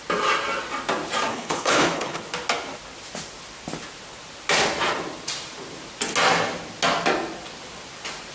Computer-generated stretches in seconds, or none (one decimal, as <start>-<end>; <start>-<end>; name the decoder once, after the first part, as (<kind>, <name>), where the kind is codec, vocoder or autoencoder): 1.3-2.2 (codec, HILCodec)